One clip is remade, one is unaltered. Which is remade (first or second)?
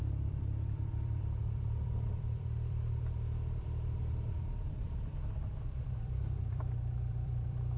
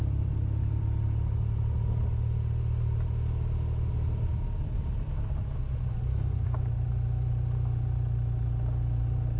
first